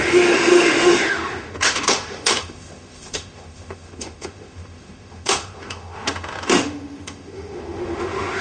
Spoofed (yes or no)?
yes